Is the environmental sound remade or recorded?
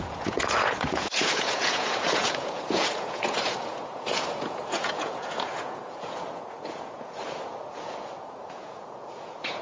remade